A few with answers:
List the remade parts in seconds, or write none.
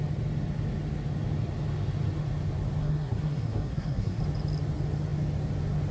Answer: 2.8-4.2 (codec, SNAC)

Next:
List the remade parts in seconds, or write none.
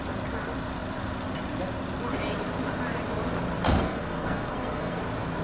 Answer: 3.8-5.0 (codec, SNAC)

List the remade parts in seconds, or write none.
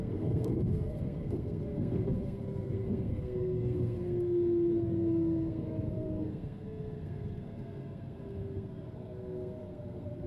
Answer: 0.0-10.3 (codec, SNAC)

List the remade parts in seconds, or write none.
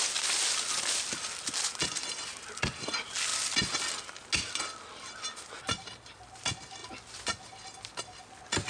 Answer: none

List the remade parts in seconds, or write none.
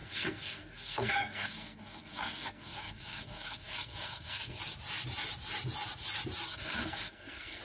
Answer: 0.0-4.6 (codec, SNAC); 6.5-7.6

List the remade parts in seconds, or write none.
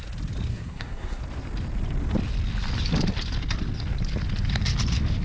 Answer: 0.5-1.2 (codec, SNAC)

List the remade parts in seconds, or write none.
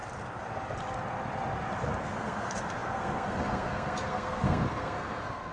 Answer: 2.0-5.5 (codec, SNAC)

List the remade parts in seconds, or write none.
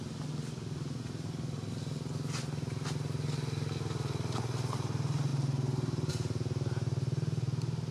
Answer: none